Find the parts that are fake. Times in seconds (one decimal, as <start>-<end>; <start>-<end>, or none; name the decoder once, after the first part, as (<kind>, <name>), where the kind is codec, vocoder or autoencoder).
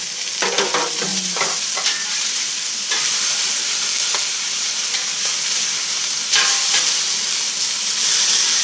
1.1-3.5 (vocoder, BigVGAN v2)